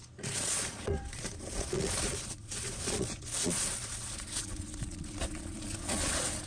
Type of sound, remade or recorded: remade